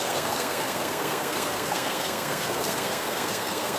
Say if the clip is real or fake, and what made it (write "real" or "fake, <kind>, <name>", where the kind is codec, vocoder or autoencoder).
fake, codec, SNAC